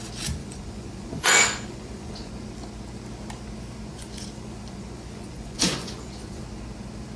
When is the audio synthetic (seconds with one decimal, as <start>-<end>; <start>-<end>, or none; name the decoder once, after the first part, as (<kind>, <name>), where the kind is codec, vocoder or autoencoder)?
0.4-2.3 (vocoder, Vocos); 3.9-6.4